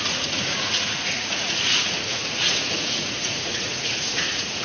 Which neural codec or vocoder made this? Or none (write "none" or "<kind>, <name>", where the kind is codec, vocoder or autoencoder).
vocoder, Vocos